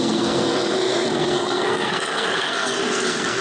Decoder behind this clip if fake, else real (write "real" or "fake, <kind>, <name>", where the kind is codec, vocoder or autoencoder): fake, codec, SNAC